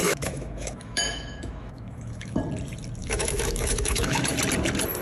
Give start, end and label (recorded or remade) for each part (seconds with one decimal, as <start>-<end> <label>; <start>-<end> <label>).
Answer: 0.0-2.4 remade; 2.4-3.0 recorded; 3.0-4.3 remade; 4.3-5.0 recorded